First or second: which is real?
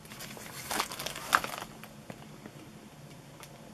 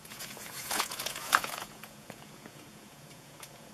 first